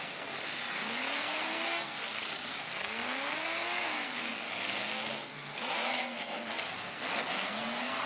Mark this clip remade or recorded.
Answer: remade